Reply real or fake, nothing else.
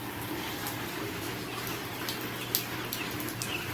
real